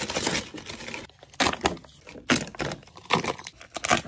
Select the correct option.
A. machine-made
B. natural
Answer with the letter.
B